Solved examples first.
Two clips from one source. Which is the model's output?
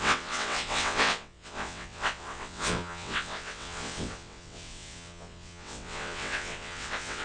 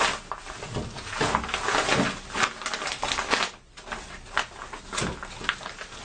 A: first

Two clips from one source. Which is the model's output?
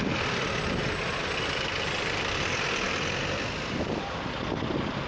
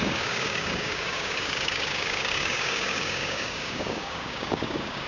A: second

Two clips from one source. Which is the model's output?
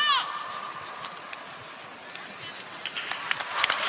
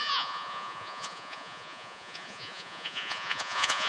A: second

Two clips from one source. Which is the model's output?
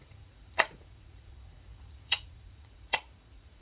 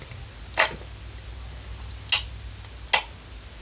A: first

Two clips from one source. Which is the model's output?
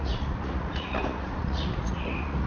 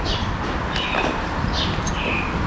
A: first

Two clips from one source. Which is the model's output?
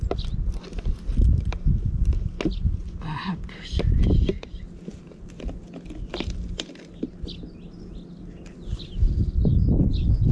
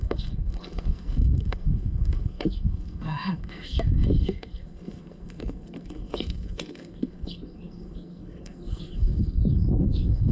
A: second